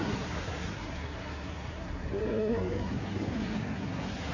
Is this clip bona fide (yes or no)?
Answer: no